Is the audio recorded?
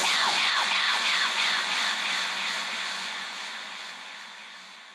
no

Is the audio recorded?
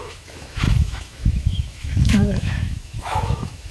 no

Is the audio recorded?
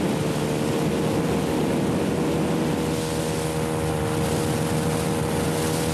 yes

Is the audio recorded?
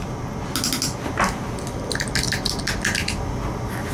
yes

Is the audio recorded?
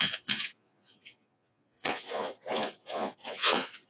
no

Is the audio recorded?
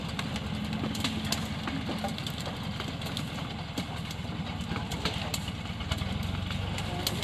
yes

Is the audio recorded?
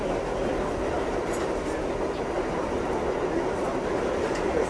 yes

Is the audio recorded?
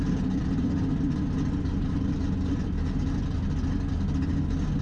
yes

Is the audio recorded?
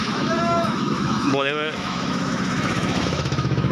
no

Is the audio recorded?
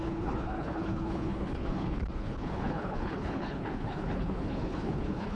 no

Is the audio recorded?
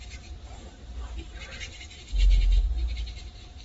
yes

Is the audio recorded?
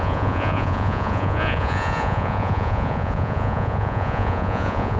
no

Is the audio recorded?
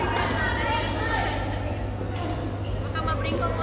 yes